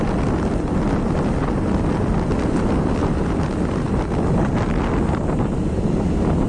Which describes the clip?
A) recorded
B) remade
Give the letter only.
A